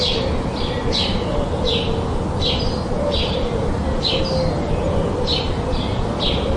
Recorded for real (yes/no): yes